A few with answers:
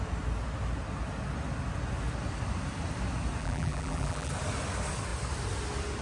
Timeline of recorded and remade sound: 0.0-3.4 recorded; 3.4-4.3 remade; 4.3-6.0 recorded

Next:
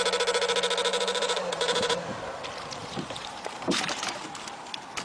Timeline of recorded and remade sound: 0.0-0.9 recorded; 0.9-2.2 remade; 2.2-2.8 recorded; 2.8-4.2 remade; 4.2-5.0 recorded

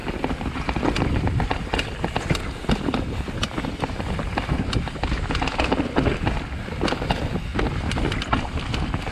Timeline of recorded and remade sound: 0.0-9.1 recorded

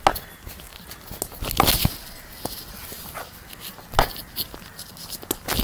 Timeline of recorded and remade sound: 0.0-5.6 recorded

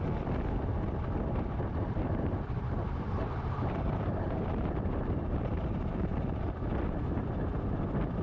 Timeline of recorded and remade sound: 0.0-1.3 recorded; 1.3-6.2 remade; 6.2-8.2 recorded

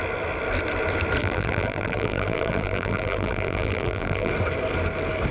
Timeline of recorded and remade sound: 0.0-1.2 recorded; 1.2-4.3 remade; 4.3-5.3 recorded